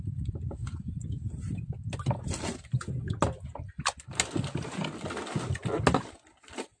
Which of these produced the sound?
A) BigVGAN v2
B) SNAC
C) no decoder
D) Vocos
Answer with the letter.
C